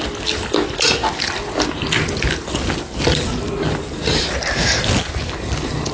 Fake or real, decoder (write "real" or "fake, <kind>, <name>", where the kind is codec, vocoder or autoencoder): real